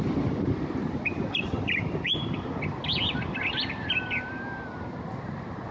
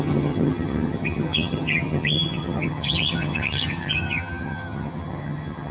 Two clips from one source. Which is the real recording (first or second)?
first